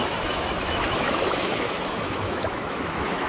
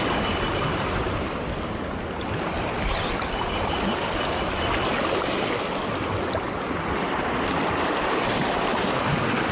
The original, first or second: second